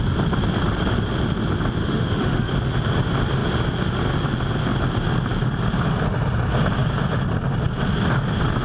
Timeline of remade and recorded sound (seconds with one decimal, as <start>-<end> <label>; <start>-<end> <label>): 0.0-1.8 recorded; 1.8-2.5 remade; 2.5-8.6 recorded